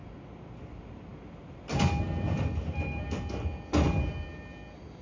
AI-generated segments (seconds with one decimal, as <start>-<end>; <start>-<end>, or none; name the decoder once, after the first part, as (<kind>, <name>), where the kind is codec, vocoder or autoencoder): none